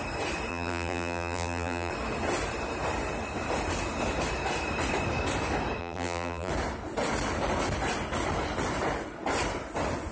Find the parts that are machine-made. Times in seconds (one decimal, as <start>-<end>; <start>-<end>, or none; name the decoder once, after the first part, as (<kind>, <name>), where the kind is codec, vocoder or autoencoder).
0.5-1.9 (vocoder, BigVGAN v2); 5.8-6.5